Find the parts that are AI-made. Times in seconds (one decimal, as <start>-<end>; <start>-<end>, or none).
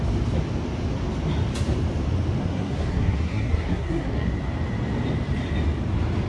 2.4-4.3